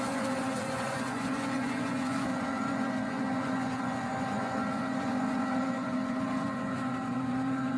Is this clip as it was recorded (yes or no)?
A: no